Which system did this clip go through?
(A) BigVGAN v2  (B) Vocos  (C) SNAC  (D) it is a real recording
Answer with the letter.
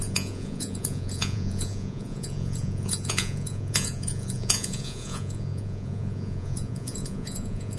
B